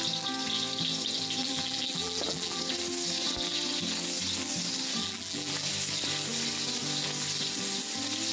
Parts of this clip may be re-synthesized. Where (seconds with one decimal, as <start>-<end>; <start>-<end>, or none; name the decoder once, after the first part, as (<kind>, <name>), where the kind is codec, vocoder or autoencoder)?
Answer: 1.4-2.6 (vocoder, BigVGAN v2); 5.0-5.7